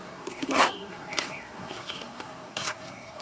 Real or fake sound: fake